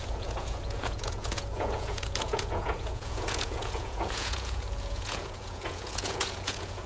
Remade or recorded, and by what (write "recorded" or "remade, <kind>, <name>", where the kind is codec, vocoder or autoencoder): remade, vocoder, Vocos